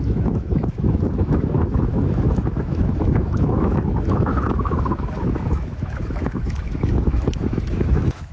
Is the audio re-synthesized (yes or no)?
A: yes